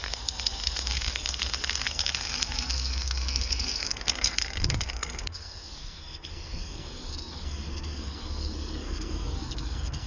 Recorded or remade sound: remade